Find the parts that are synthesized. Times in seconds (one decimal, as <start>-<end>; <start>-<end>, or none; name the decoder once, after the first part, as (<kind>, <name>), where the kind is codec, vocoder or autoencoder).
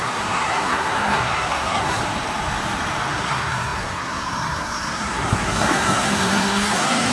0.0-2.0 (codec, SNAC); 3.1-7.1